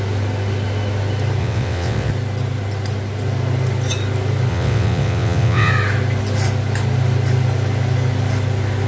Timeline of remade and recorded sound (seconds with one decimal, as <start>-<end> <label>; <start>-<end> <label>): 0.0-1.4 recorded; 1.4-2.1 remade; 2.1-4.5 recorded; 4.5-5.7 remade; 5.7-8.9 recorded